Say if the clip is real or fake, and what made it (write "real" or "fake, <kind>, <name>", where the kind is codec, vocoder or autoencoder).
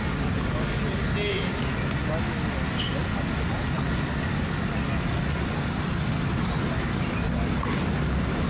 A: real